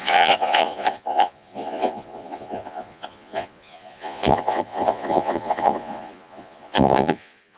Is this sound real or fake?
fake